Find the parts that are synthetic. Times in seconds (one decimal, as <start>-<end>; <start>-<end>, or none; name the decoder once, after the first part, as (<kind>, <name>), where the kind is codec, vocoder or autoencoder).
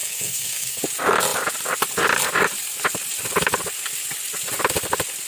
0.0-0.8 (codec, SNAC)